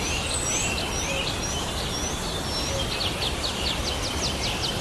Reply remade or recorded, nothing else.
recorded